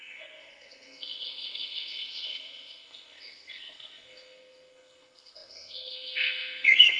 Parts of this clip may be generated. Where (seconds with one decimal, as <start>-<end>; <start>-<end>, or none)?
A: 0.0-7.0